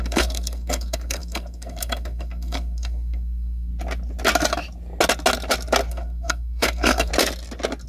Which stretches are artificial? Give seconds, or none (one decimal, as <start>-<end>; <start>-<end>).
0.0-3.7; 5.9-7.1